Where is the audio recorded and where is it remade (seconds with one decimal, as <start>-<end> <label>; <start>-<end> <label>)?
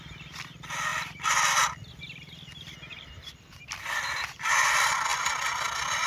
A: 0.0-6.1 recorded